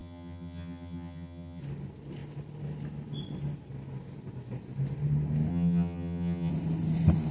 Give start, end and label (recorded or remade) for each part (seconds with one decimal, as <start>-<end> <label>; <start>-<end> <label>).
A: 0.0-1.6 remade; 1.6-5.5 recorded; 5.5-6.5 remade; 6.5-7.3 recorded